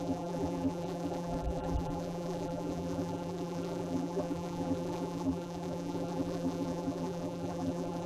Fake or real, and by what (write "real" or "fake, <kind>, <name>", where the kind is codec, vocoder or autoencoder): fake, vocoder, BigVGAN v2